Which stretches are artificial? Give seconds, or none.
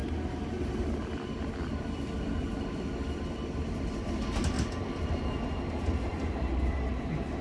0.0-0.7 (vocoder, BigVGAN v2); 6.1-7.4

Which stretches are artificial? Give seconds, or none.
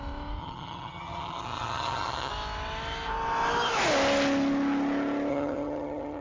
0.4-2.3 (vocoder, HiFi-GAN); 5.3-6.2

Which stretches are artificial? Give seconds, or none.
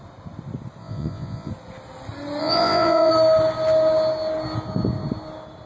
0.8-1.5 (vocoder, Vocos); 2.4-3.1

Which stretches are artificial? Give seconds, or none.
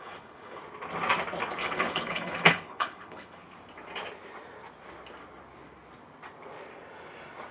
0.0-0.6 (codec, HILCodec); 1.6-3.4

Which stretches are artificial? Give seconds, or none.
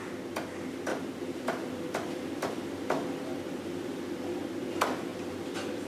0.9-4.4 (vocoder, BigVGAN v2); 5.1-5.9